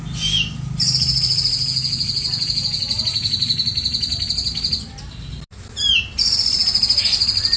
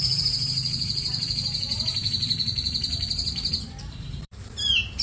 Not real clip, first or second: second